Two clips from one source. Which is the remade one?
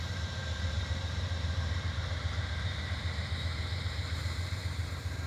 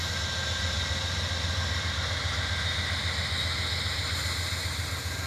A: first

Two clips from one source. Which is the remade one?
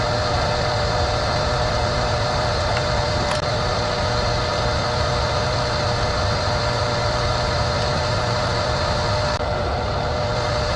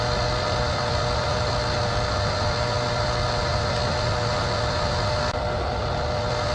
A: first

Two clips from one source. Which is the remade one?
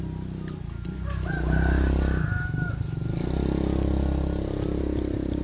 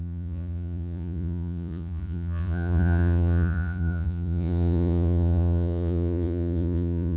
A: second